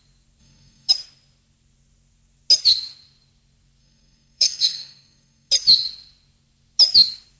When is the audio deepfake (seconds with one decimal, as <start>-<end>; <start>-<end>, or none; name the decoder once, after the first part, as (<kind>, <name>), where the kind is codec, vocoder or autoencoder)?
0.4-0.9 (codec, SNAC); 3.8-5.5